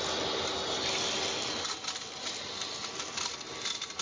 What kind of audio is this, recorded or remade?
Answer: recorded